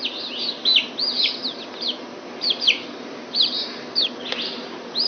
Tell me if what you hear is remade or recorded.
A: recorded